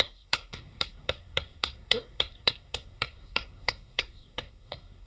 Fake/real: fake